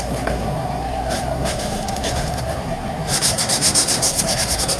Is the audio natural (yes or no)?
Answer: no